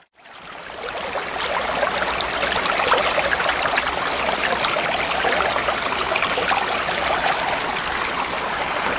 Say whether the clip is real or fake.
real